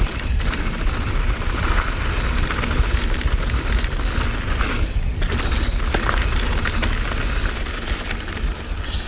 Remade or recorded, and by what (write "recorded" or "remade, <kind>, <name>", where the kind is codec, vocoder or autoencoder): recorded